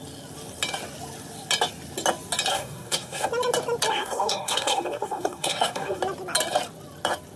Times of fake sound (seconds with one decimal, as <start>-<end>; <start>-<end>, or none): 2.5-3.3; 3.9-6.0